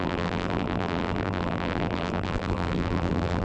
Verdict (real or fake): fake